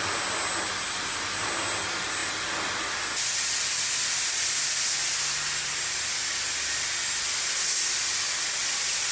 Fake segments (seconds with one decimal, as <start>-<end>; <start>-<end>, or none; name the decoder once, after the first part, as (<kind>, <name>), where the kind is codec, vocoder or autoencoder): none